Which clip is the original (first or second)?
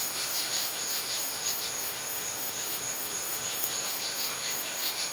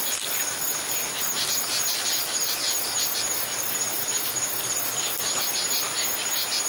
second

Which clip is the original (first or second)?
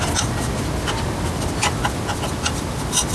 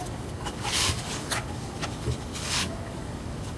first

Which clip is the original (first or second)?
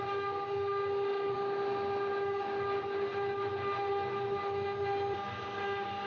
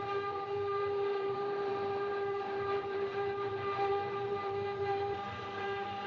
first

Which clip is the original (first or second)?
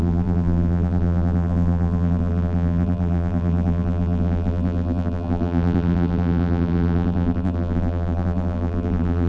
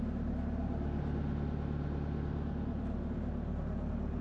second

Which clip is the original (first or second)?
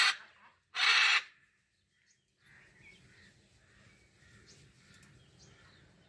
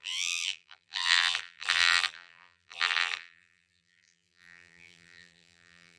first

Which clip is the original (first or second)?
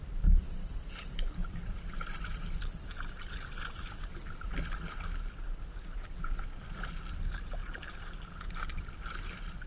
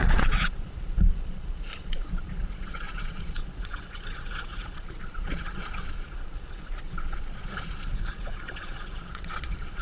first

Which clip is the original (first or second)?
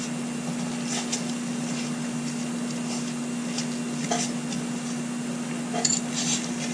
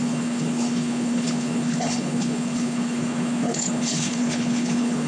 first